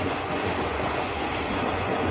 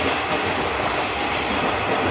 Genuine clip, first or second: second